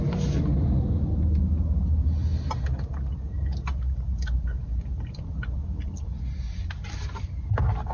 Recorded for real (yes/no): yes